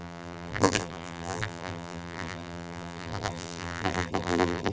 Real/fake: fake